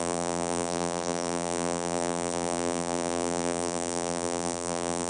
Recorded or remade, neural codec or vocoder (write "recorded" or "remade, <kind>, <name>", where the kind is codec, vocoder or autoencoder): remade, vocoder, BigVGAN v2